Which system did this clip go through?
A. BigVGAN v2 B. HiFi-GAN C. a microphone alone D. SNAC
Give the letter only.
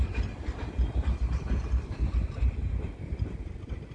C